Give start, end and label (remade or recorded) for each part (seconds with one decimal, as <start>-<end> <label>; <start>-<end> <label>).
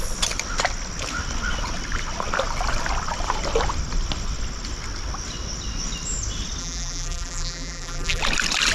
0.0-6.6 recorded; 6.6-8.2 remade; 8.2-8.7 recorded